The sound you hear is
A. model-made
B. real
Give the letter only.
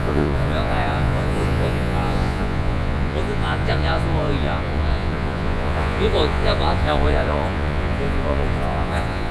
A